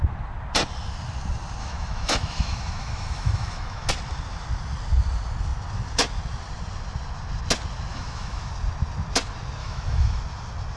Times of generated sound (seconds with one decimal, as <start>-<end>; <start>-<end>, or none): 1.6-3.9; 7.9-8.5; 9.6-10.2

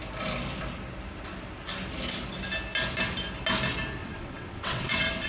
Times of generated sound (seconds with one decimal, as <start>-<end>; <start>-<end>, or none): 4.0-5.3

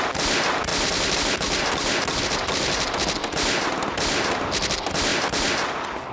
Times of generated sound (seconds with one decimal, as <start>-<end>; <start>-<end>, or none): none

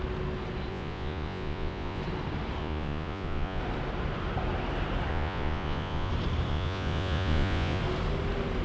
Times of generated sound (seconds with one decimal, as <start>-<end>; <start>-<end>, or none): 0.7-2.0; 2.6-3.6; 5.1-6.1; 6.5-7.8

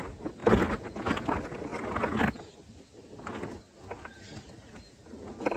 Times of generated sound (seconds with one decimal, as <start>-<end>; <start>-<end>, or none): none

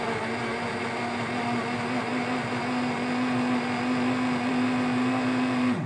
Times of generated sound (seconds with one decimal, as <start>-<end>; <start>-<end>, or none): none